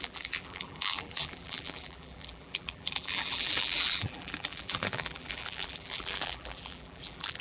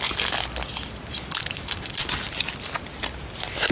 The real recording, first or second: second